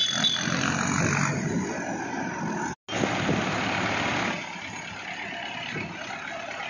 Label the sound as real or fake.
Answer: real